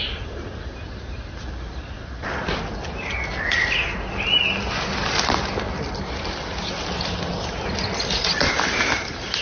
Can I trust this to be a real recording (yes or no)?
yes